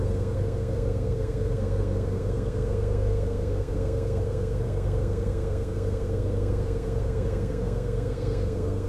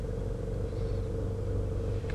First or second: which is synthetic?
first